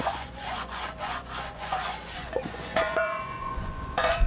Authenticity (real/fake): fake